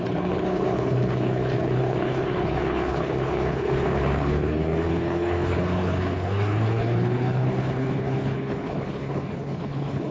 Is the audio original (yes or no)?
no